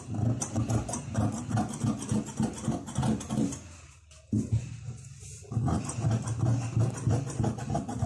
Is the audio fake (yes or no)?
no